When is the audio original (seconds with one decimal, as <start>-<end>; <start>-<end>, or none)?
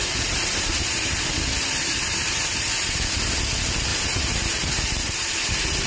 3.5-3.9